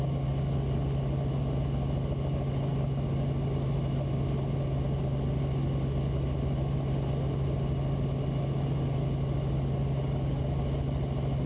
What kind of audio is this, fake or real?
real